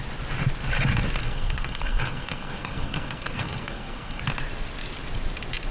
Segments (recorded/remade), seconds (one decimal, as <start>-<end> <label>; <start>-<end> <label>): 0.0-1.2 recorded; 1.2-4.2 remade; 4.2-5.7 recorded